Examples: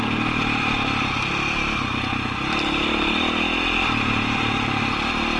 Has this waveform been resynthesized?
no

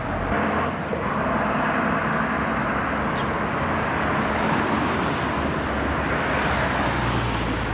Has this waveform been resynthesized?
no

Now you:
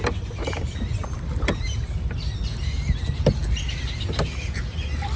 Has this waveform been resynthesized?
no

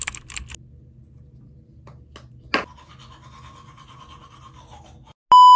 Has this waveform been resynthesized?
no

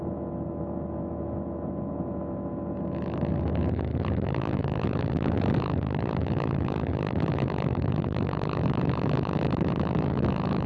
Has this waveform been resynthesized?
yes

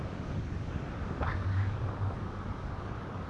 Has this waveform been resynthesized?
yes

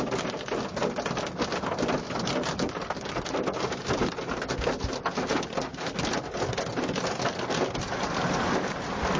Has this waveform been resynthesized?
no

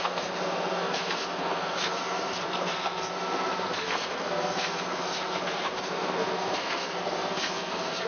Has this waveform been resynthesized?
yes